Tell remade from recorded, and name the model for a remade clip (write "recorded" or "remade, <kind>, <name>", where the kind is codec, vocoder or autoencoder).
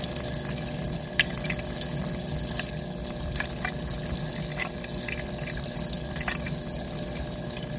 recorded